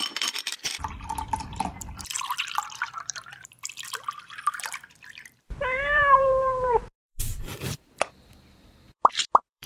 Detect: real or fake fake